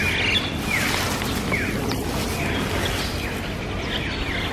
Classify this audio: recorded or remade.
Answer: recorded